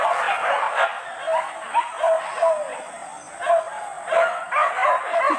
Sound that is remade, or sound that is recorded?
recorded